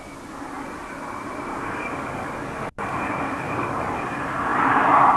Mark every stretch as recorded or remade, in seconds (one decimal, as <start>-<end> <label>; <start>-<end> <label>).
0.0-1.5 recorded; 1.5-4.0 remade; 4.0-5.2 recorded